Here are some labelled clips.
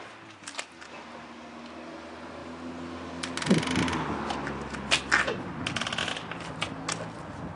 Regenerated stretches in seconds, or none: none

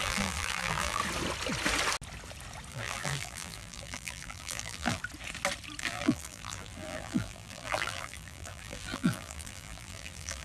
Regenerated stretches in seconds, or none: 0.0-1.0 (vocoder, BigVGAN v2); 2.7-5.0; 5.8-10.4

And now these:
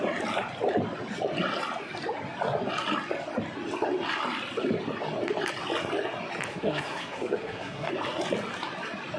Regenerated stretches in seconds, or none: 6.5-7.9 (codec, SNAC)

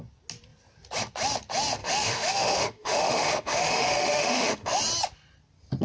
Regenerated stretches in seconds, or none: 1.8-4.8 (autoencoder, DAC-VAE)